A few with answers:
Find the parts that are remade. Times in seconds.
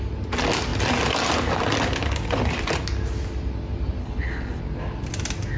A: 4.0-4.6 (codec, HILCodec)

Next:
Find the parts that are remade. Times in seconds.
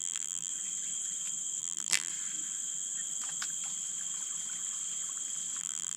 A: 0.0-0.5 (vocoder, BigVGAN v2); 1.6-2.1; 5.6-6.0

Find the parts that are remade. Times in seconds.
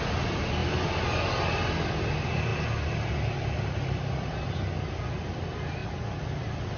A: none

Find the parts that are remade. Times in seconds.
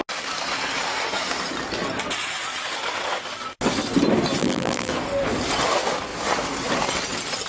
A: 4.4-4.9 (vocoder, BigVGAN v2)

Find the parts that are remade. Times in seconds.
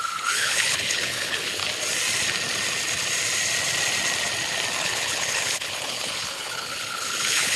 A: 0.0-1.6 (codec, HILCodec); 4.8-7.6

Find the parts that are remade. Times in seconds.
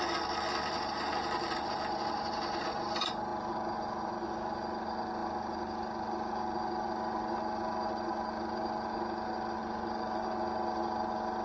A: none